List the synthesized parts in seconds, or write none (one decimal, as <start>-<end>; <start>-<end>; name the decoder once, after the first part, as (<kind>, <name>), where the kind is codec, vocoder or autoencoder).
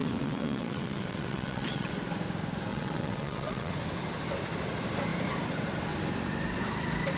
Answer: 0.0-1.9 (vocoder, WaveNeXt); 2.7-3.7